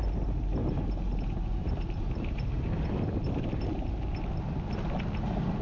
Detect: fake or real real